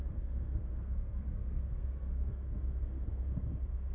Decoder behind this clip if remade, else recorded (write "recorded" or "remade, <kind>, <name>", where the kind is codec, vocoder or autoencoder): remade, codec, SNAC